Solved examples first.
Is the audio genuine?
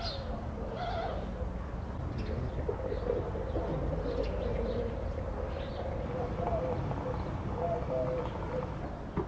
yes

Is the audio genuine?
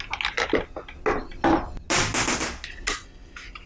yes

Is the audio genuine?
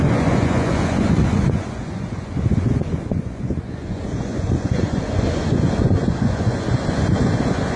no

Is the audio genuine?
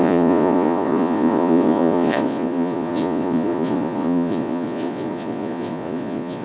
no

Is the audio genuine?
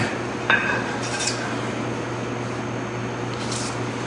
yes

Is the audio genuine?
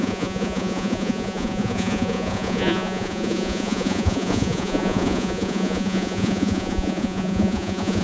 no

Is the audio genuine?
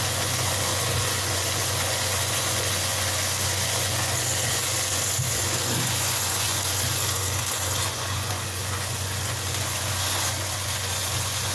no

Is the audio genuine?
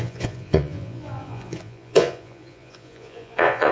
no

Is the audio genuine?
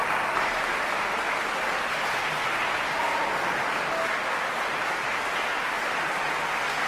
yes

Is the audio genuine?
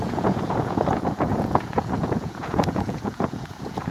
no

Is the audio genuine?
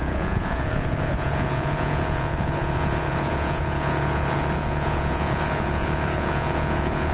no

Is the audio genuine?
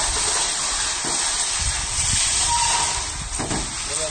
yes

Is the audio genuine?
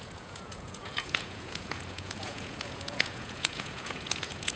no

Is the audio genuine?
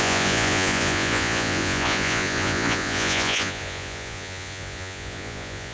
no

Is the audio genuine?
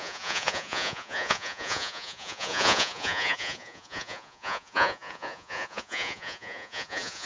no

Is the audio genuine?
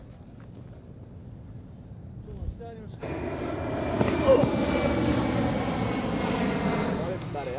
yes